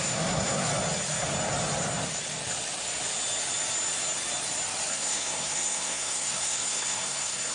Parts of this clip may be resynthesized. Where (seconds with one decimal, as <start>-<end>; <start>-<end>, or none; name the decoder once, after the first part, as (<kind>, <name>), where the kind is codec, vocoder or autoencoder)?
0.0-0.7 (codec, SNAC); 4.9-7.5